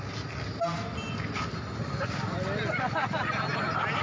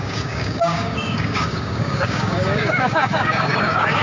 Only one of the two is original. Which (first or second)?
first